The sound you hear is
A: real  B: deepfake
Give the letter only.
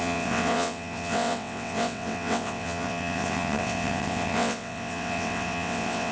B